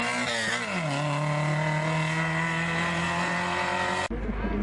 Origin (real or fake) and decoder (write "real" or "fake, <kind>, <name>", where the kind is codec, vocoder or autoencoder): real